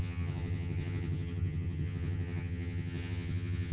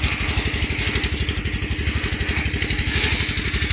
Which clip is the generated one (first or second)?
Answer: first